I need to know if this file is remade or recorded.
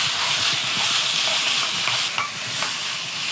recorded